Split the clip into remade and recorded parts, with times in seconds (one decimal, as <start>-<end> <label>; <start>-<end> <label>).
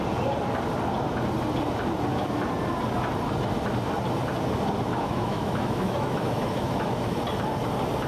0.0-4.9 recorded; 4.9-7.2 remade; 7.2-8.1 recorded